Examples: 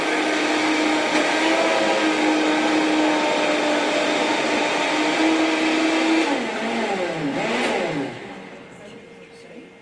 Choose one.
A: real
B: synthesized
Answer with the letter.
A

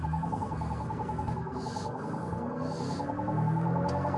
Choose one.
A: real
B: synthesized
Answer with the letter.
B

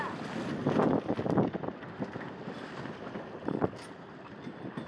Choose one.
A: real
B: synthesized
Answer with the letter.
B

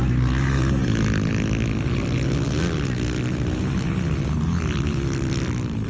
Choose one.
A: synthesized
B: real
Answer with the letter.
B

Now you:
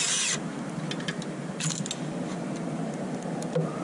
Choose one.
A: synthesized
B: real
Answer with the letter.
B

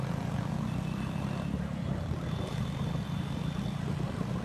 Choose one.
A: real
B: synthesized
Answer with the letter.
A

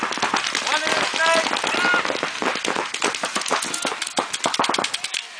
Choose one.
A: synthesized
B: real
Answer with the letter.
B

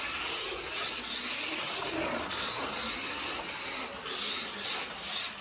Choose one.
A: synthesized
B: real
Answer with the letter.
B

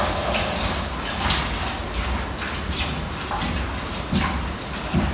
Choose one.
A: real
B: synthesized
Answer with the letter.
A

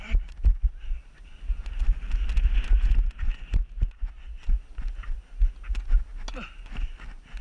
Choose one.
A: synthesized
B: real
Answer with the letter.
B